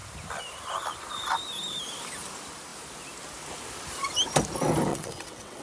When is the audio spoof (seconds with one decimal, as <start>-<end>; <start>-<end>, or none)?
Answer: 4.9-5.6